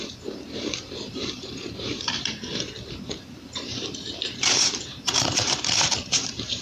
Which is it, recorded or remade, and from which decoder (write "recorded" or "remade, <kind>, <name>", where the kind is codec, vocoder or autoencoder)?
remade, vocoder, BigVGAN v2